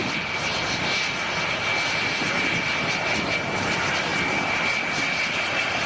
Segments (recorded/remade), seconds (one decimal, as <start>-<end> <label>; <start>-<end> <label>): 0.0-0.5 remade; 0.5-3.6 recorded; 3.6-4.1 remade; 4.1-5.3 recorded; 5.3-5.9 remade